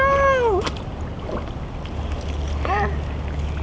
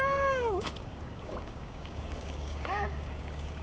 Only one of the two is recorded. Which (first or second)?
first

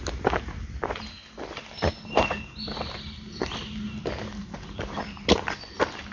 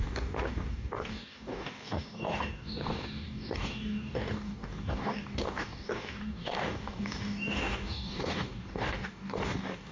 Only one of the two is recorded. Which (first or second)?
first